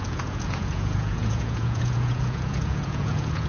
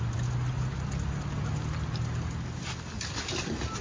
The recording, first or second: second